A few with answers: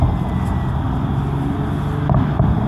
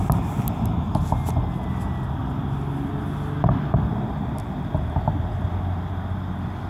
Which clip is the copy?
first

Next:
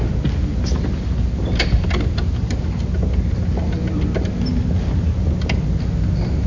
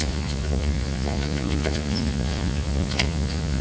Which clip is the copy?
second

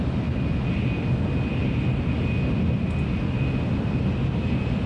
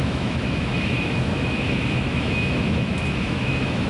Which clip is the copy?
second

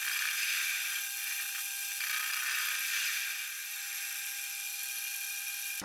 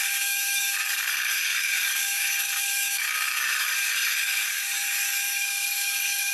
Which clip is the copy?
second